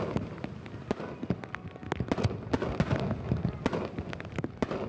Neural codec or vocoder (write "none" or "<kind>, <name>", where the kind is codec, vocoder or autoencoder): none